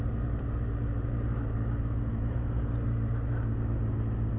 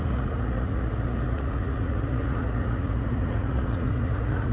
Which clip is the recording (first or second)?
first